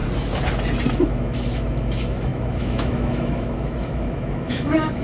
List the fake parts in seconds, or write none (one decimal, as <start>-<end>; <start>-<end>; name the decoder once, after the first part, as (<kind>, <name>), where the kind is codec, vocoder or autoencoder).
0.9-5.0 (autoencoder, DAC-VAE)